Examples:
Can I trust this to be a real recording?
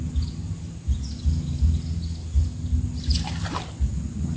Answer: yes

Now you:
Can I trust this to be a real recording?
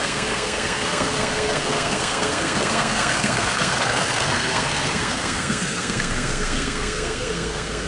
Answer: no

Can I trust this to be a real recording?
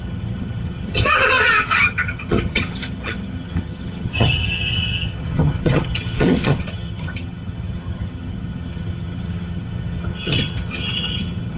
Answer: no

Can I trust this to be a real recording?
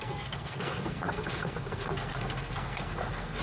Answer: no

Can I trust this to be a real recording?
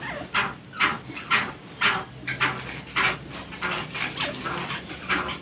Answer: yes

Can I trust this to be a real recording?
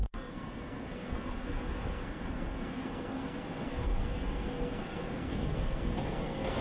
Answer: no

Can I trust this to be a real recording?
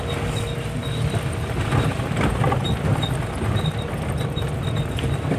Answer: yes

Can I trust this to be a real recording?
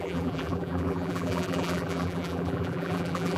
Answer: no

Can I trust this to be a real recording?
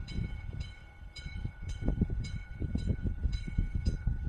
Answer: no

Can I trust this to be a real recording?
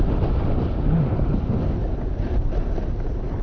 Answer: yes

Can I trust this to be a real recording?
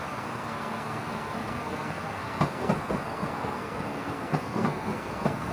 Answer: no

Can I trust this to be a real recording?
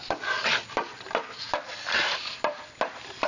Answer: yes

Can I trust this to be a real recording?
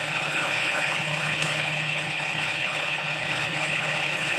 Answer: no